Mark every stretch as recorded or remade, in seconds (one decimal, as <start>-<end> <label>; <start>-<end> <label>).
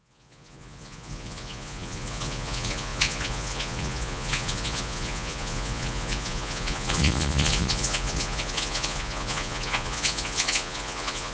0.0-11.3 remade